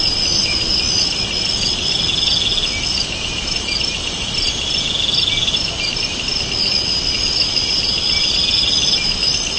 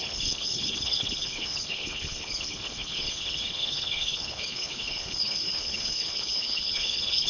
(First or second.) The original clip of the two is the first